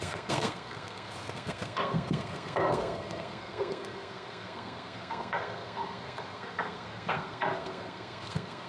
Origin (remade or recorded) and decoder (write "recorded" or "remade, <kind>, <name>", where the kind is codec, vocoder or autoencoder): remade, codec, SNAC